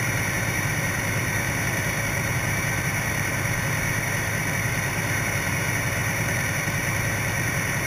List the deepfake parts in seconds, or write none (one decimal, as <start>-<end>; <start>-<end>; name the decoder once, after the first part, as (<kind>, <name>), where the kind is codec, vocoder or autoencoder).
0.0-7.9 (vocoder, BigVGAN v2)